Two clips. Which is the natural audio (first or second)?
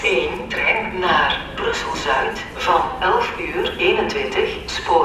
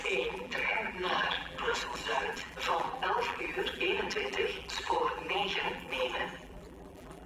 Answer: first